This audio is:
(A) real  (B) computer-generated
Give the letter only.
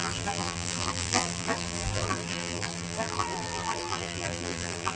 B